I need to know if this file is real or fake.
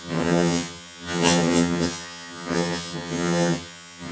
fake